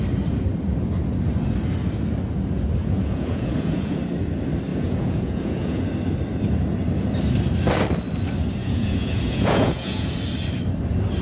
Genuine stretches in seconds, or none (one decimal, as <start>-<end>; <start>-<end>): 0.0-2.8; 4.0-4.7; 5.8-8.6; 10.1-11.2